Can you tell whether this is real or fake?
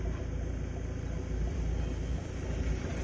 real